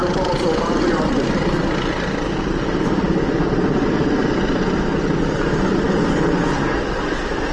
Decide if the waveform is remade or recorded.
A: recorded